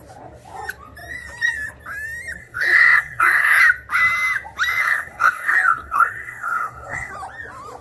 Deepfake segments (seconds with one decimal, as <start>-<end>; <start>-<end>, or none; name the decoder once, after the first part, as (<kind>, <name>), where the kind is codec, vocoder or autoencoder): 2.4-3.6 (codec, SNAC); 4.8-7.1